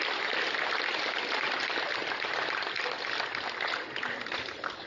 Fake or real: real